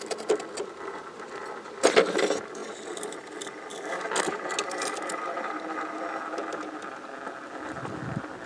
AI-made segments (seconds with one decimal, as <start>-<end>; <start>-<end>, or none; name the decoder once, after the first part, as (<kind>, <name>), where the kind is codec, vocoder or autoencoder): none

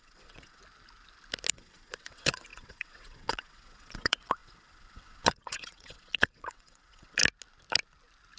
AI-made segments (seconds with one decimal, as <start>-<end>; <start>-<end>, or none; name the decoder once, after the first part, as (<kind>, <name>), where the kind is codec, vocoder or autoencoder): 0.0-0.6 (vocoder, WaveNeXt); 1.5-7.2

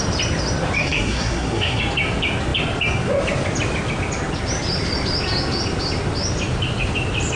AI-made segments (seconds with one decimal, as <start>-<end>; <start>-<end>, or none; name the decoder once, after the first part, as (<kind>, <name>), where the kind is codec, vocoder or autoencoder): 0.8-1.8 (codec, SNAC)

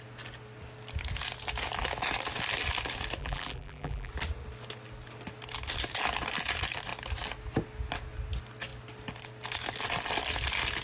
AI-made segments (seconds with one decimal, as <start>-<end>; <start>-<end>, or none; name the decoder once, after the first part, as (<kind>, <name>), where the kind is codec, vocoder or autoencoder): 3.2-4.1 (vocoder, BigVGAN v2)

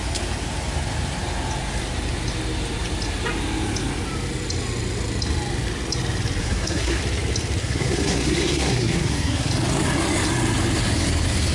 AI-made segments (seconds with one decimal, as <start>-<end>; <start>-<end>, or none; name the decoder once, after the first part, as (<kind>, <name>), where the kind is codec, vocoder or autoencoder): 6.4-7.0 (codec, SNAC); 7.6-9.5

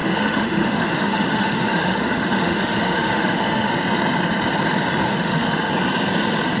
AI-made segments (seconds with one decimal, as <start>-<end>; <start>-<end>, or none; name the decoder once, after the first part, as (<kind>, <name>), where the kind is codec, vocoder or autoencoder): 0.0-3.7 (autoencoder, DAC-VAE); 5.1-5.7